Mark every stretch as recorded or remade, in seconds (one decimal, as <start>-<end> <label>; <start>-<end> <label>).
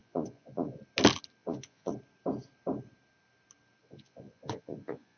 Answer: 0.0-0.8 remade; 0.8-1.4 recorded; 1.4-1.9 remade; 1.9-3.8 recorded; 3.8-5.2 remade